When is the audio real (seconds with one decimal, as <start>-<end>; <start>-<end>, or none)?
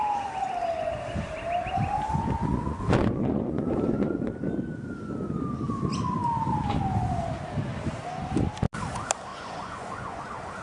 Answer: 0.0-2.5; 4.3-9.3; 10.2-10.6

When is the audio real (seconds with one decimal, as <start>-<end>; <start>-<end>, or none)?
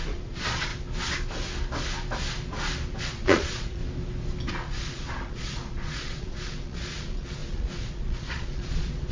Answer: 0.7-3.0; 3.8-4.5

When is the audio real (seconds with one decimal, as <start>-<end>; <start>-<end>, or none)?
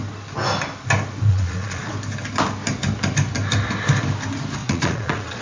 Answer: 0.0-1.3; 1.9-4.6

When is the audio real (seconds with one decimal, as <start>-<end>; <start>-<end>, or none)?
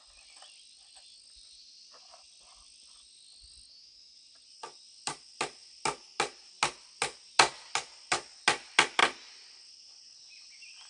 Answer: 0.0-10.9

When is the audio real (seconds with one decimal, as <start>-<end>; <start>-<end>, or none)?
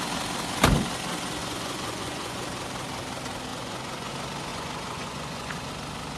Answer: 0.0-1.4; 2.4-3.5; 4.1-4.5; 5.7-6.2